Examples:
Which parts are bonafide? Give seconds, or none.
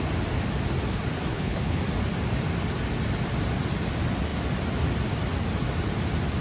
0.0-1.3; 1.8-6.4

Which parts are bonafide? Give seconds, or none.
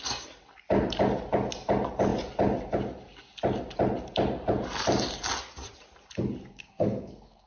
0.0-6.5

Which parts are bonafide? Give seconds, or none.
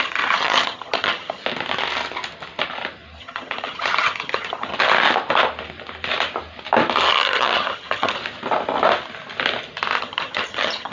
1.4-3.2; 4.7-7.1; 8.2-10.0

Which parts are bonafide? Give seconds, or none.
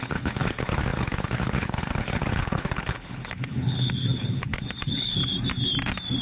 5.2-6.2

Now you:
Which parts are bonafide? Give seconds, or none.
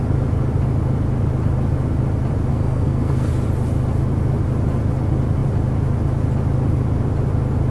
0.0-2.5; 3.3-7.7